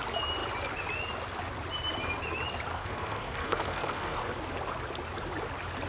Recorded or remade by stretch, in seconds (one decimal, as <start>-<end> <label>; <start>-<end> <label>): 0.0-2.7 recorded; 2.7-4.2 remade; 4.2-5.9 recorded